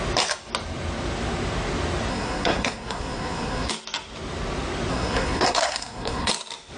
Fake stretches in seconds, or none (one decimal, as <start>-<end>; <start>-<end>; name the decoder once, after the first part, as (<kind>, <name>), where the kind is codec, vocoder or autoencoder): 2.1-3.7 (codec, SNAC); 4.9-6.3